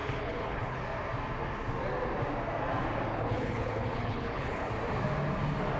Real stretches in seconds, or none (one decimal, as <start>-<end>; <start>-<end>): 0.8-3.1; 4.7-5.8